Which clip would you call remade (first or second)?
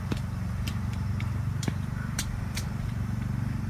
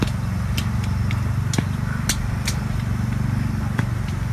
first